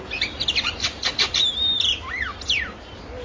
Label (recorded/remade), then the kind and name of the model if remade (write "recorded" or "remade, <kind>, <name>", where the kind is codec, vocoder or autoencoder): recorded